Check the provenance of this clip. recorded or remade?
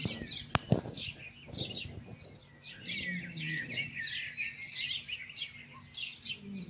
recorded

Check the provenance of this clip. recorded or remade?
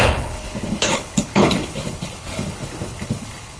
remade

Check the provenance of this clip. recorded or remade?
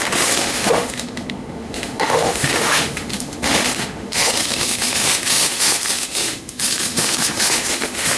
remade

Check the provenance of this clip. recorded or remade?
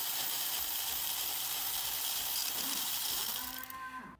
remade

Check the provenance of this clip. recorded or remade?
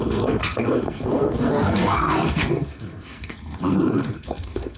remade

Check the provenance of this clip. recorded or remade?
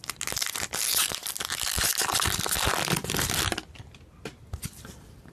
recorded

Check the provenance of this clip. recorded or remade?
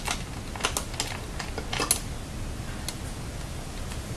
recorded